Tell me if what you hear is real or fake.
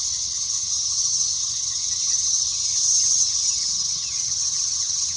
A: fake